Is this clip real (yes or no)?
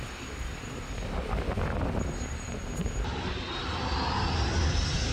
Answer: yes